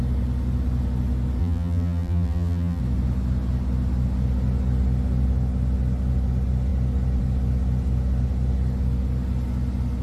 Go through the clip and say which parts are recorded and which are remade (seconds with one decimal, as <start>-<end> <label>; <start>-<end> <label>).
0.0-1.4 recorded; 1.4-2.8 remade; 2.8-10.0 recorded